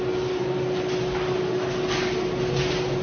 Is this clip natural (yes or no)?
yes